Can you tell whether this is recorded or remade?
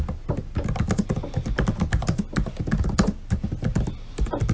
recorded